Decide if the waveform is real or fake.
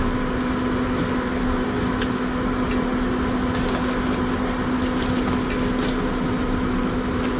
real